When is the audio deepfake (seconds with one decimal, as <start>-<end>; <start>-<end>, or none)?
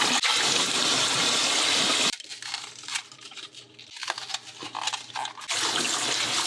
3.0-3.6